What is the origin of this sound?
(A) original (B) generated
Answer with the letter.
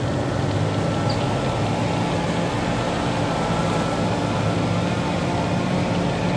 A